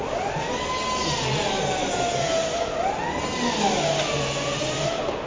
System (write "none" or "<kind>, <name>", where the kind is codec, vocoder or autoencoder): none